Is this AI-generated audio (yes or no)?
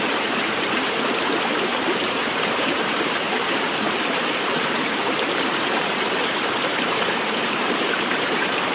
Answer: yes